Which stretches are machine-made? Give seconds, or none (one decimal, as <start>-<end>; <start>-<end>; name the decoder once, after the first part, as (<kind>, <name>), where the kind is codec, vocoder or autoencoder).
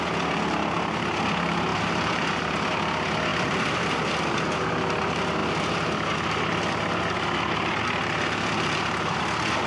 1.7-2.8 (vocoder, BigVGAN v2); 3.3-3.9